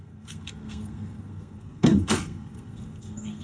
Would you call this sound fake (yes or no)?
yes